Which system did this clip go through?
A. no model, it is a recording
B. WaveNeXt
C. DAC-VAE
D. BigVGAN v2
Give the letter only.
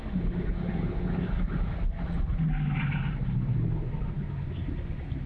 A